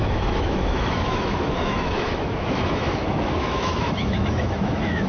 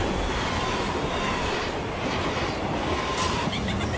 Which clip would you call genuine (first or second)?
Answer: second